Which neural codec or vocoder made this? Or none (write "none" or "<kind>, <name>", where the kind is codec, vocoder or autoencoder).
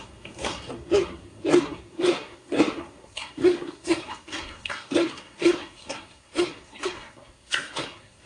codec, SNAC